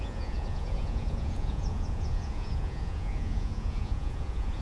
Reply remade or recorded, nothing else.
remade